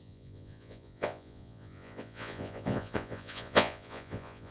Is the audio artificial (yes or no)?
yes